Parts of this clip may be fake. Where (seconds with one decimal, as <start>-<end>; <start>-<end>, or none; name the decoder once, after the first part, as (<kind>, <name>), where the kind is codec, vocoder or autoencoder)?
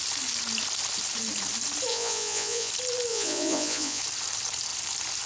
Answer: 1.9-2.7 (vocoder, Vocos); 3.1-4.0